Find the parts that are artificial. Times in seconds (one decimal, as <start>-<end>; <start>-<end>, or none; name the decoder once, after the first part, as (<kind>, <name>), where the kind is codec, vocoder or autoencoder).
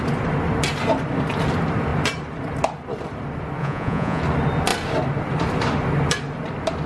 3.6-4.2 (vocoder, Vocos)